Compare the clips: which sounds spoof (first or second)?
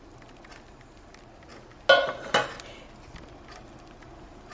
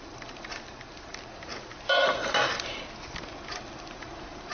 second